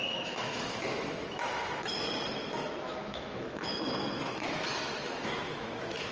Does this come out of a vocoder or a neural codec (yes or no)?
yes